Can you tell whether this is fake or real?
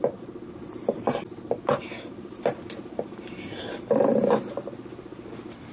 real